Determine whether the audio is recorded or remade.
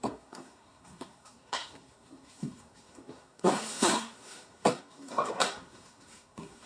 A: remade